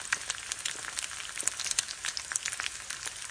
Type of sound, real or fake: real